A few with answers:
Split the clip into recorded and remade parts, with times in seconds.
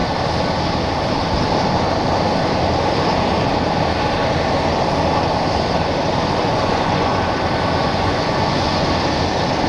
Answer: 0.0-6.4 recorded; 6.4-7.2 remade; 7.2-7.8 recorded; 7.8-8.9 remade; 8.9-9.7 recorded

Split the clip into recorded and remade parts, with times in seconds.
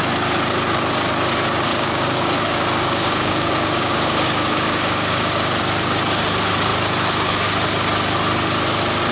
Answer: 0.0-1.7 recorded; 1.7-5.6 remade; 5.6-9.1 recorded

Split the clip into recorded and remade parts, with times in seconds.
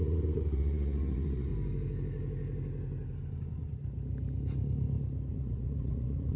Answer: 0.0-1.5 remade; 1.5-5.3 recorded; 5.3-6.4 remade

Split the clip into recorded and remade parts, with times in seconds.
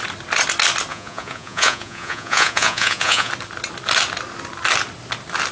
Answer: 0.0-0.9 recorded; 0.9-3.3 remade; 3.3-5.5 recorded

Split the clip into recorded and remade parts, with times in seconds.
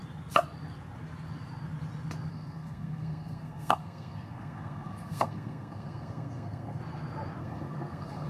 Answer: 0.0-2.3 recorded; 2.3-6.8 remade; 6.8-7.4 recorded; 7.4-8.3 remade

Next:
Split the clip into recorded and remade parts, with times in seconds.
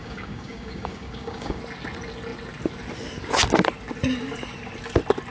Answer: 0.0-1.6 remade; 1.6-5.3 recorded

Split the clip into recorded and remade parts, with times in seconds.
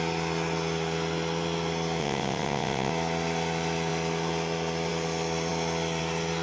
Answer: 0.0-2.0 recorded; 2.0-2.9 remade; 2.9-6.4 recorded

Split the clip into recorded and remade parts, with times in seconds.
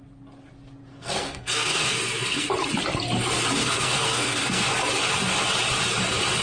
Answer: 0.0-0.9 recorded; 0.9-2.5 remade; 2.5-3.6 recorded; 3.6-4.7 remade; 4.7-6.4 recorded